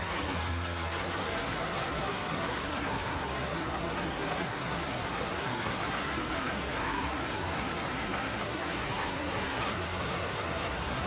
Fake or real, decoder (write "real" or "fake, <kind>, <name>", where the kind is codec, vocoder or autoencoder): fake, codec, SNAC